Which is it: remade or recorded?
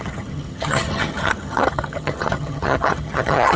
remade